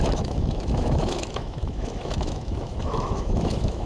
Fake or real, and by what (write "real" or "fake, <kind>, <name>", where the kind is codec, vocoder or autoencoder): fake, autoencoder, DAC-VAE